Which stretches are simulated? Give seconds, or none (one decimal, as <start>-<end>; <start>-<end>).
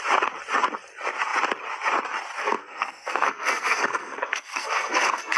2.4-5.4